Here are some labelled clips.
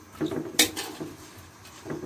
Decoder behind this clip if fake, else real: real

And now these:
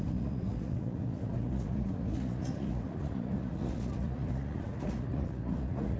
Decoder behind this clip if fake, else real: fake, vocoder, Vocos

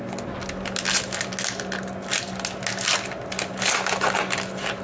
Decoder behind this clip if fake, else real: real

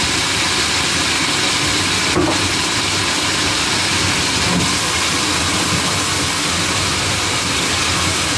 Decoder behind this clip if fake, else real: real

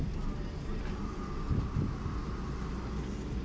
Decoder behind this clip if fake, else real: real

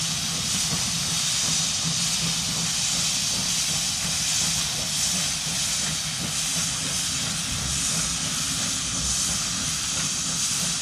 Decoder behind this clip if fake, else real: real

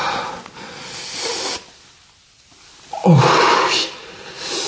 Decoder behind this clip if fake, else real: real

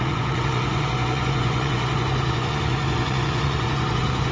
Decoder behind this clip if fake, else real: fake, vocoder, Vocos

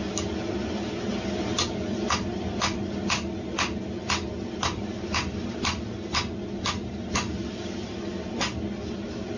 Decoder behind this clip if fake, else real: real